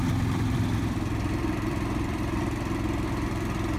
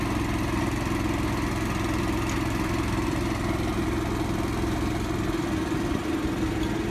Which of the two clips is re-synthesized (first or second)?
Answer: first